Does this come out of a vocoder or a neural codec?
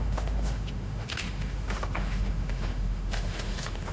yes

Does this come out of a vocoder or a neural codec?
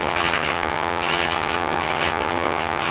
yes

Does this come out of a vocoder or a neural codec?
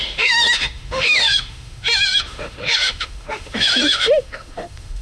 yes